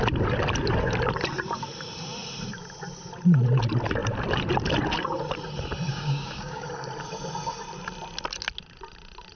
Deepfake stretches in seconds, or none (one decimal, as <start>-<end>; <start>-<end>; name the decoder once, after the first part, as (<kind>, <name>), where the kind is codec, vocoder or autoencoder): 5.9-6.7 (codec, DAC)